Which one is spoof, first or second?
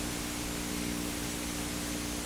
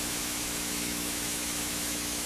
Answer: second